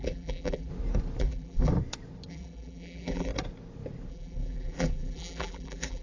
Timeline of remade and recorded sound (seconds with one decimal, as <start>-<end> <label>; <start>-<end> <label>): 0.0-0.7 remade; 0.7-1.2 recorded; 1.2-1.7 remade; 1.7-2.3 recorded; 2.3-3.3 remade; 3.3-4.1 recorded; 4.1-6.0 remade